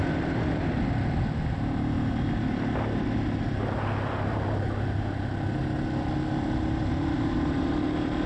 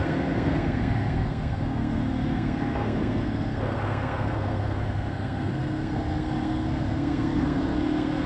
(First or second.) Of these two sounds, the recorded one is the first